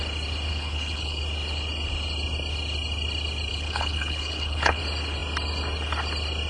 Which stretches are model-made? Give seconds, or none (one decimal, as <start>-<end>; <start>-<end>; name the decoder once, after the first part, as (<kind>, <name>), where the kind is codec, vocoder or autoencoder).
0.5-1.2 (codec, HILCodec); 3.5-4.8